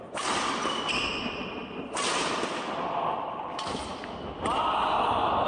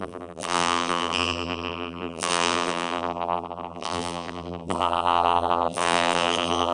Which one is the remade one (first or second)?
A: second